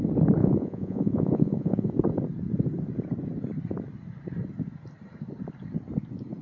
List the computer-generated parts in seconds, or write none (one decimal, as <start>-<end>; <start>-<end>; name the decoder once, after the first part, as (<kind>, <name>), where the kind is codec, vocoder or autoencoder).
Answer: 0.4-1.9 (vocoder, Vocos)